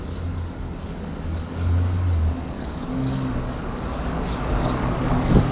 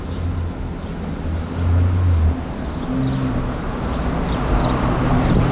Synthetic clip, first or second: first